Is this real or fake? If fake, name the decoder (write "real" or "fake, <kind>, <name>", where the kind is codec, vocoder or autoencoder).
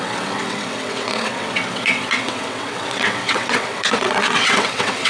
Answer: fake, vocoder, WaveNeXt